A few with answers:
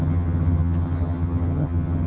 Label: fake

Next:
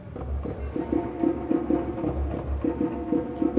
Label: real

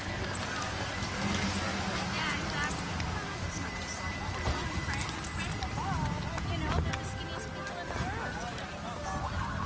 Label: real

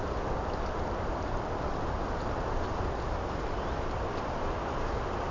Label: real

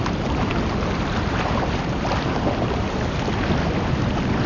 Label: real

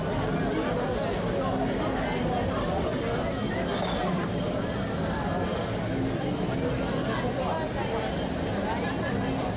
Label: real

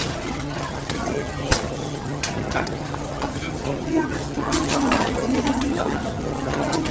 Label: fake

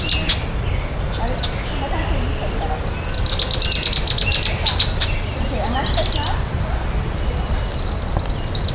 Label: real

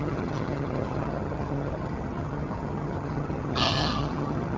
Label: fake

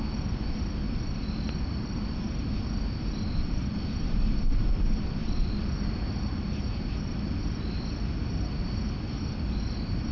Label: real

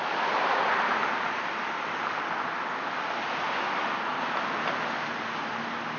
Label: real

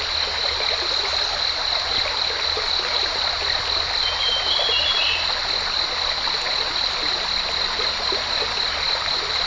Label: real